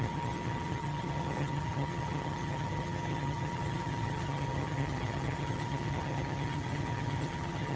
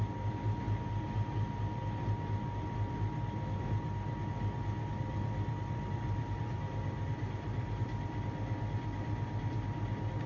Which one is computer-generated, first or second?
first